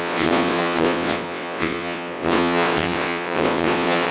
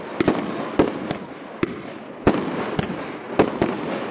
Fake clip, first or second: first